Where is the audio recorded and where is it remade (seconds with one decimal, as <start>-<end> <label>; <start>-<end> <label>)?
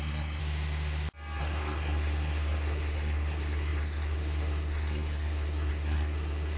0.0-0.4 remade; 0.4-1.4 recorded; 1.4-6.6 remade